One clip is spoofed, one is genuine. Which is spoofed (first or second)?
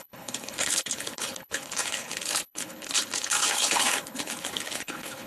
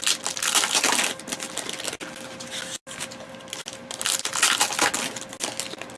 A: first